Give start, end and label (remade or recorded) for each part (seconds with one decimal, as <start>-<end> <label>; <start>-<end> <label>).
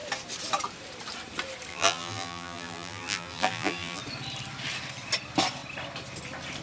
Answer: 0.0-1.7 recorded; 1.7-4.0 remade; 4.0-6.6 recorded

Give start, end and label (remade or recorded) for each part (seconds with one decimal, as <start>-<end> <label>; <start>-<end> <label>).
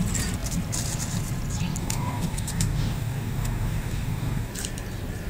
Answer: 0.0-1.8 recorded; 1.8-4.5 remade; 4.5-5.3 recorded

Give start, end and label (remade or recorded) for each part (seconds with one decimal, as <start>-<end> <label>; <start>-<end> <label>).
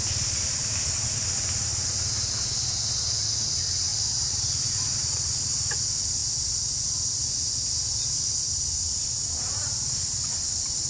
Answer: 0.0-10.9 recorded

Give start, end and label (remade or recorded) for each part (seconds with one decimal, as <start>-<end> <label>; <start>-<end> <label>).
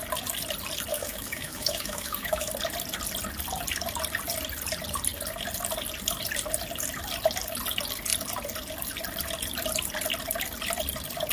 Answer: 0.0-0.9 recorded; 0.9-2.5 remade; 2.5-11.3 recorded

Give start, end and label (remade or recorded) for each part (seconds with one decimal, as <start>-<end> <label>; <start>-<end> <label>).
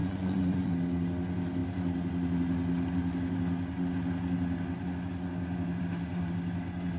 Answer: 0.0-0.7 remade; 0.7-7.0 recorded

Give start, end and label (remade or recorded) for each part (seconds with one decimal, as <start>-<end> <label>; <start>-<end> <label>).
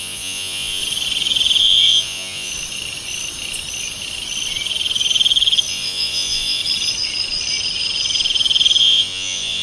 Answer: 0.0-0.8 remade; 0.8-1.6 recorded; 1.6-2.5 remade; 2.5-5.7 recorded; 5.7-6.6 remade; 6.6-8.8 recorded; 8.8-9.6 remade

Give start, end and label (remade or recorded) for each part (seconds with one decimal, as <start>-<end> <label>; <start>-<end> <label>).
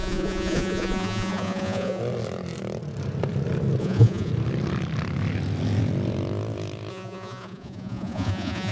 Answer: 0.0-2.0 remade; 2.0-3.8 recorded; 3.8-4.3 remade; 4.3-6.9 recorded; 6.9-8.7 remade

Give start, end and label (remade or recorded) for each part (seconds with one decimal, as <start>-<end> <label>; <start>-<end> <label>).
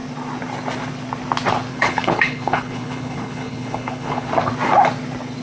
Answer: 0.0-1.7 recorded; 1.7-4.3 remade; 4.3-5.4 recorded